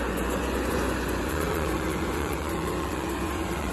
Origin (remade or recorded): remade